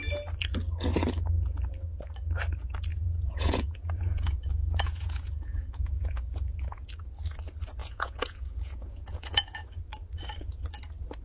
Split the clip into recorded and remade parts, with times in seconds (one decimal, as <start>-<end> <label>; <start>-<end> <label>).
0.0-2.9 recorded; 2.9-6.9 remade; 6.9-7.8 recorded; 7.8-9.7 remade; 9.7-11.2 recorded